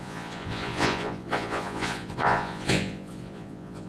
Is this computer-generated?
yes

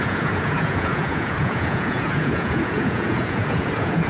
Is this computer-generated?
yes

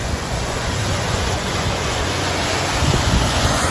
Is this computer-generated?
yes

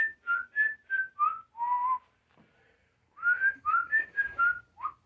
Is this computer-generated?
no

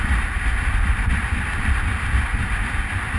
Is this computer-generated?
no